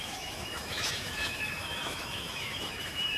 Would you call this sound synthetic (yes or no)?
yes